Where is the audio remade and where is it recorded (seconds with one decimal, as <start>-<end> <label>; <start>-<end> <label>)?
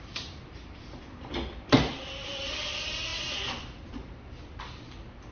0.0-3.1 remade; 3.1-5.3 recorded